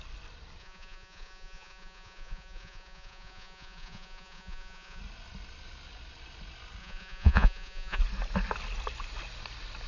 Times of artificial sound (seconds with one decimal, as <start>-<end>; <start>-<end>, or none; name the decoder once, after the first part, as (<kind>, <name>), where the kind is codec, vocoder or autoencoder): 0.6-5.0 (vocoder, Vocos); 6.8-8.0